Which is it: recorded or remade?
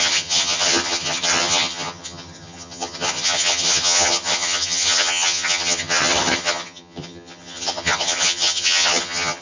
remade